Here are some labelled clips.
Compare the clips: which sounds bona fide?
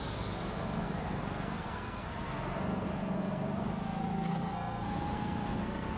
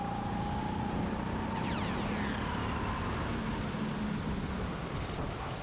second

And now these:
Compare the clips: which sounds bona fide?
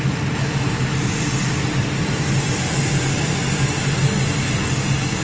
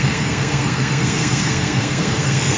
first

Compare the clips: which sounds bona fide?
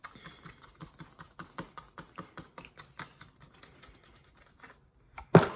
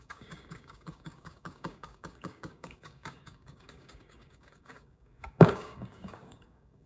first